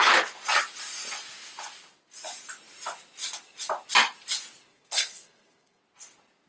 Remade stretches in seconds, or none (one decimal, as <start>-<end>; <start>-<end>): 4.7-5.8